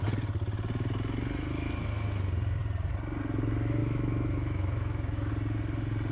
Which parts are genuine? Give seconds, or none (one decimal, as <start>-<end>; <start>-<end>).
0.0-3.8; 5.3-6.1